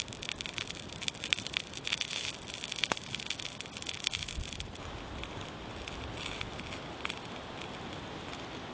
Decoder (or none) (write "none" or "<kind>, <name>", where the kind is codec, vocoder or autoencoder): none